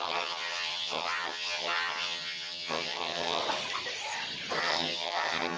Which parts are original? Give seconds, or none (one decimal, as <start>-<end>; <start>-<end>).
3.4-4.6